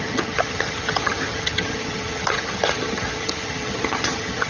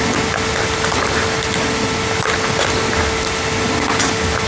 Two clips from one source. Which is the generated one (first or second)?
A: first